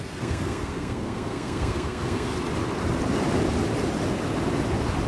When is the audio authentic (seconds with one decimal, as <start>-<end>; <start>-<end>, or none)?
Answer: 2.3-5.1